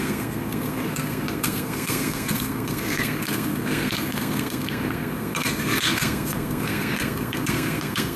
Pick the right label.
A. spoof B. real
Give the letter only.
A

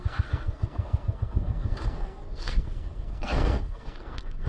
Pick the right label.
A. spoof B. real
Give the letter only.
A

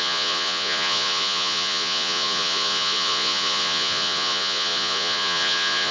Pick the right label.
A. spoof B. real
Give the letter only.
A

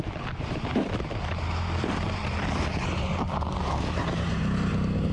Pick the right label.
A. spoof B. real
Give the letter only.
B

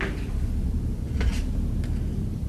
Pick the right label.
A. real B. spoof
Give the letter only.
A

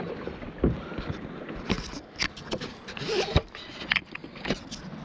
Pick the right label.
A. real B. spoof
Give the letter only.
A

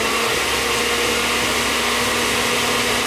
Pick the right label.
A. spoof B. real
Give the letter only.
B